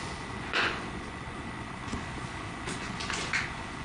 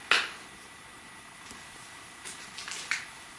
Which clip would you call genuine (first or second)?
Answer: second